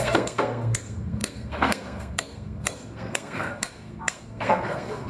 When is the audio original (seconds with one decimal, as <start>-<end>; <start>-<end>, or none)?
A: none